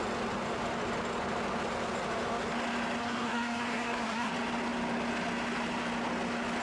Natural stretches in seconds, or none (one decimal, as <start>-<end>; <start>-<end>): 0.0-3.0; 4.3-6.6